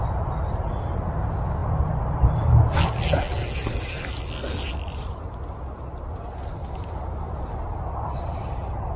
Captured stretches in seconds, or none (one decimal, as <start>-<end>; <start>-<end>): 0.0-9.0